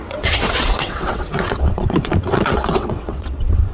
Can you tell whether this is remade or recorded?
remade